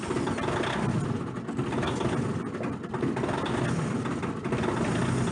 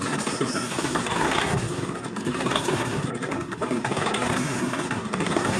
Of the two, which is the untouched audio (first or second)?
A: first